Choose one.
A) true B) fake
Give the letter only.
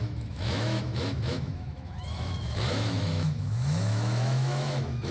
B